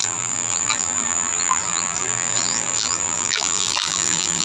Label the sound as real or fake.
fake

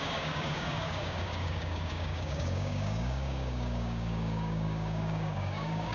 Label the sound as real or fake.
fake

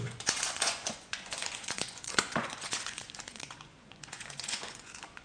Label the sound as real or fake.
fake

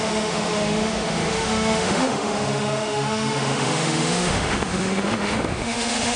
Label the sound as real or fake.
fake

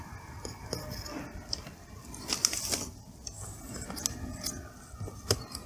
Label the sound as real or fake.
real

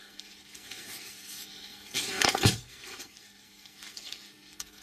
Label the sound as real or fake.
fake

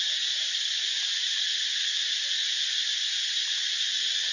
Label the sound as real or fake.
real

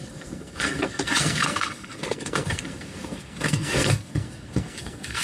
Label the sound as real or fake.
fake